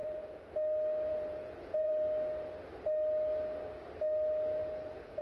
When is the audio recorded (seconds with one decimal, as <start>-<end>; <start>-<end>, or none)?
0.5-1.1; 1.9-4.6